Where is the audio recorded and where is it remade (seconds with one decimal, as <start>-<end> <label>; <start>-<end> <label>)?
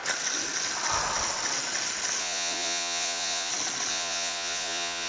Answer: 0.0-2.2 recorded; 2.2-3.5 remade; 3.5-3.9 recorded; 3.9-5.1 remade